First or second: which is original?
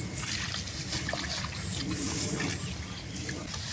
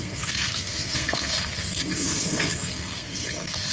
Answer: first